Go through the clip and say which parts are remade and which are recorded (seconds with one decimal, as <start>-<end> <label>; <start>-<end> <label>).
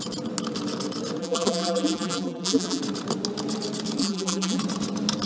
0.0-1.2 recorded; 1.2-2.8 remade; 2.8-4.0 recorded; 4.0-4.6 remade; 4.6-5.3 recorded